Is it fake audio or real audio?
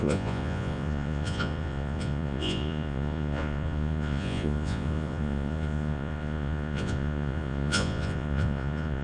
fake